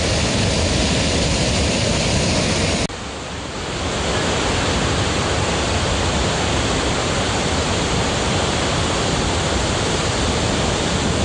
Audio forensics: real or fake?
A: real